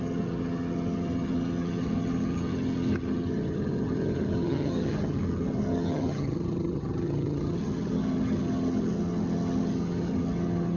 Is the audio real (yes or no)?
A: no